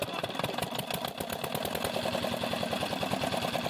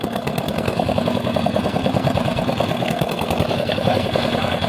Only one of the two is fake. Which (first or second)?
second